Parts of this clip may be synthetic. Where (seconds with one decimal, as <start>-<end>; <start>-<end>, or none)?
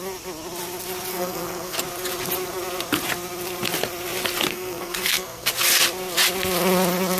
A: 1.1-1.8; 4.5-5.5